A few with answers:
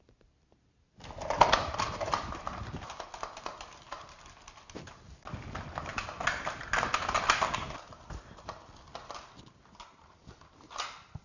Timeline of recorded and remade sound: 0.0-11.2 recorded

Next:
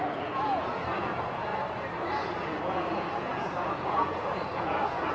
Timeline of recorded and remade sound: 0.0-1.5 remade; 1.5-2.6 recorded; 2.6-5.1 remade

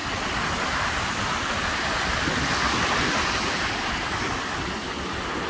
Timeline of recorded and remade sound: 0.0-5.5 recorded

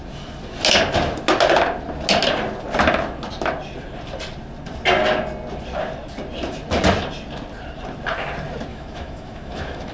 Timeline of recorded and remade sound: 0.0-8.7 recorded; 8.7-9.9 remade

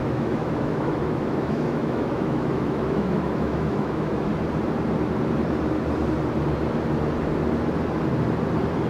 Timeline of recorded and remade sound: 0.0-4.3 remade; 4.3-8.9 recorded

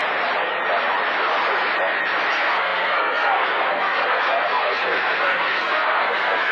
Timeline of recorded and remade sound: 0.0-2.3 recorded; 2.3-6.5 remade

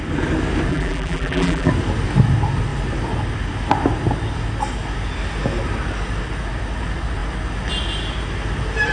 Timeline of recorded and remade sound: 0.0-0.7 recorded; 0.7-1.7 remade; 1.7-8.9 recorded